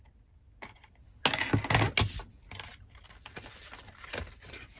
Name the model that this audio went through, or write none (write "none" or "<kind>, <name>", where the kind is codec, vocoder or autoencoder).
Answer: none